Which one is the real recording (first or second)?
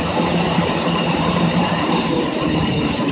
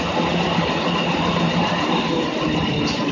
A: second